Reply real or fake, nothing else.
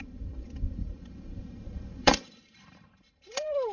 fake